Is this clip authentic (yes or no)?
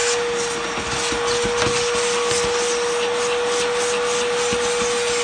yes